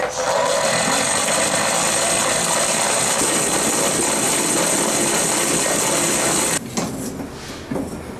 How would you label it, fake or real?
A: real